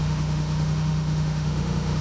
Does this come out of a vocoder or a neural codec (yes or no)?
yes